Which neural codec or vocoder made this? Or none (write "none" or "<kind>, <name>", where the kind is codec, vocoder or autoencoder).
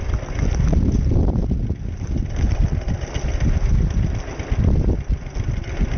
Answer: none